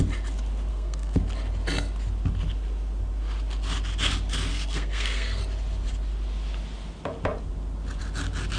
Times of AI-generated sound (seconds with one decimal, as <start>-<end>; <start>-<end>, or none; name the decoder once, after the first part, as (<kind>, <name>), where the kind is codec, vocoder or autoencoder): 0.7-1.2 (codec, SNAC); 4.5-5.4